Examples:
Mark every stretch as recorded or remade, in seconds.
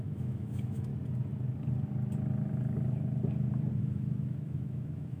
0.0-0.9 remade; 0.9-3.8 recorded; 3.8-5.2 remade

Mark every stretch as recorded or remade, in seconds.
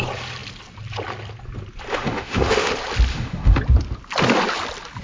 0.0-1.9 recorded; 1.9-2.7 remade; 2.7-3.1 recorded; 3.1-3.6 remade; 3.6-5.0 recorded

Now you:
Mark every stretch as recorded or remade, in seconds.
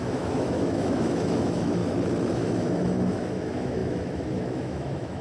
0.0-1.8 remade; 1.8-2.3 recorded; 2.3-5.2 remade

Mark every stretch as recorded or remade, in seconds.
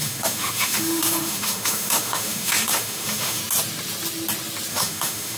0.0-3.4 remade; 3.4-4.7 recorded; 4.7-5.4 remade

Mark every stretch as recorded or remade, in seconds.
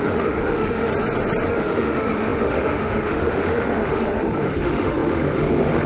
0.0-0.9 remade; 0.9-1.5 recorded; 1.5-5.9 remade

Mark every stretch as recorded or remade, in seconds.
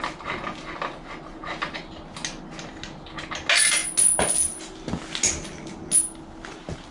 0.0-6.9 recorded